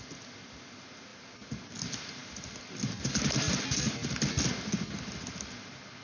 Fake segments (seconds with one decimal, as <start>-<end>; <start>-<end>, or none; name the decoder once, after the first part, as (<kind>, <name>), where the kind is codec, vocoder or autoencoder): none